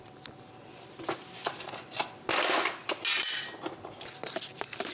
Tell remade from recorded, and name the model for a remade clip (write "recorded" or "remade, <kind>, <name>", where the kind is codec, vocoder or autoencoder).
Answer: recorded